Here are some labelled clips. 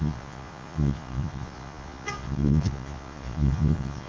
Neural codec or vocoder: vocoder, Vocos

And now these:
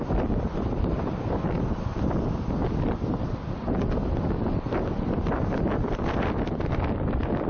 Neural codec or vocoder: none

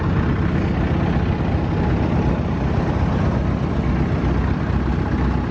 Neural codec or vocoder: none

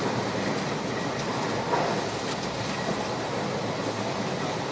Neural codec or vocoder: none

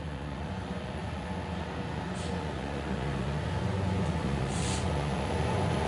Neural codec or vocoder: vocoder, Vocos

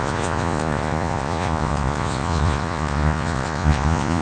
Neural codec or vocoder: vocoder, Vocos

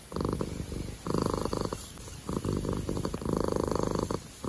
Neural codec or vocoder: none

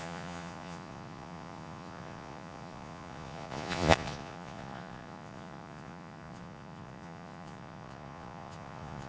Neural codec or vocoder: vocoder, Vocos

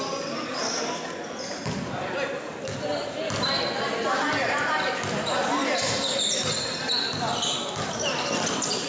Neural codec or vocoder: none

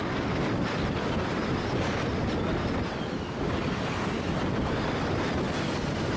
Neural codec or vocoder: none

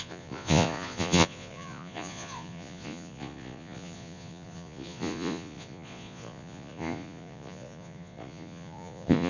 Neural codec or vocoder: vocoder, Vocos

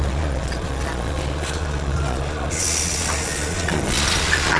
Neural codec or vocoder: vocoder, Vocos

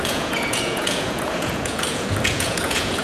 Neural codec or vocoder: vocoder, Vocos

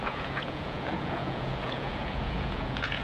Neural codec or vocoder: vocoder, Vocos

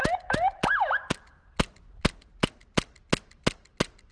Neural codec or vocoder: none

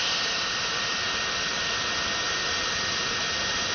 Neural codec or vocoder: none